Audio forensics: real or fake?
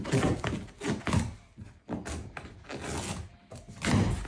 real